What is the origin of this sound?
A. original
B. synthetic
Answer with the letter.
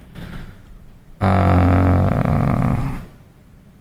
B